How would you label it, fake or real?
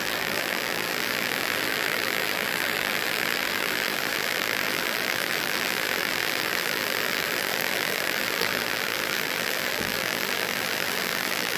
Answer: fake